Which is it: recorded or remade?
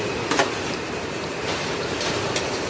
remade